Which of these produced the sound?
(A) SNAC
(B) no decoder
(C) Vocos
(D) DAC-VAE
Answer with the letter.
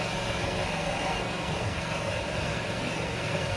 A